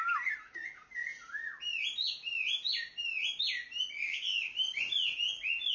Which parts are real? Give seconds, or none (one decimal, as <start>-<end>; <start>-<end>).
0.0-5.7